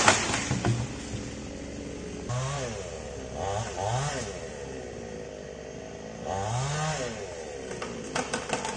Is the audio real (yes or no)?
yes